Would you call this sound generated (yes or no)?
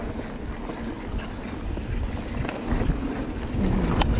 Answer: no